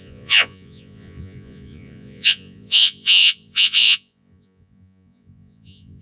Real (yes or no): no